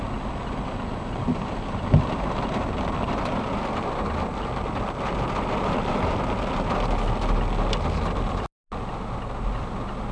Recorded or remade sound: recorded